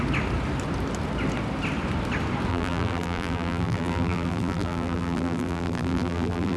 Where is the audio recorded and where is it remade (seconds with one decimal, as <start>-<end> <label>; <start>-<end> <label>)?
0.0-2.5 recorded; 2.5-6.6 remade